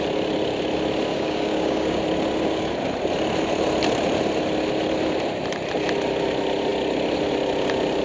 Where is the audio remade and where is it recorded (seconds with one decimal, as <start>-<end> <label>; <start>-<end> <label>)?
0.0-1.1 recorded; 1.1-2.0 remade; 2.0-8.0 recorded